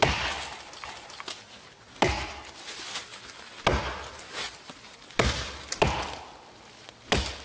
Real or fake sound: real